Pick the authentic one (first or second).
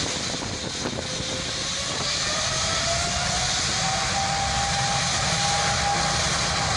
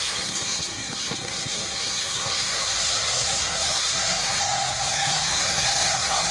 first